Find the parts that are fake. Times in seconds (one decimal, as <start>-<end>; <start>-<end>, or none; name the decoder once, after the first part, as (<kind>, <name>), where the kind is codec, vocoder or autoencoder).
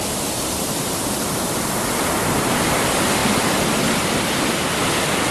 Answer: none